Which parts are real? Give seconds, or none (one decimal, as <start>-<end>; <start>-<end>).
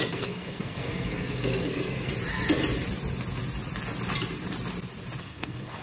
2.1-5.2